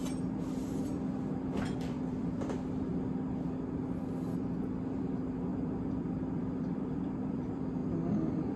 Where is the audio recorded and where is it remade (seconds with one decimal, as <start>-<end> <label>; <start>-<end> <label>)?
0.0-0.6 recorded; 0.6-2.9 remade; 2.9-5.0 recorded; 5.0-7.8 remade; 7.8-8.6 recorded